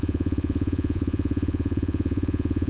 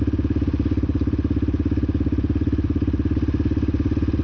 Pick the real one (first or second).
second